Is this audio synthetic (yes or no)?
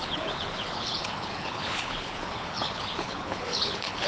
yes